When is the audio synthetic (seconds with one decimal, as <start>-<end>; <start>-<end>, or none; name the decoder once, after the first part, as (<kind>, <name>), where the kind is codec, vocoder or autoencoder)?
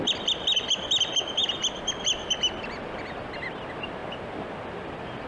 none